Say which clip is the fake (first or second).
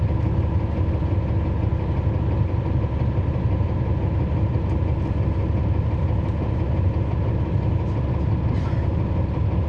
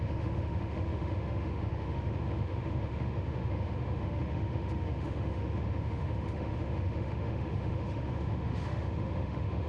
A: second